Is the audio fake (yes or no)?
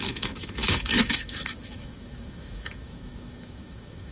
yes